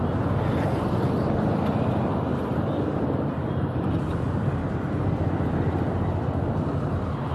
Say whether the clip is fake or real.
real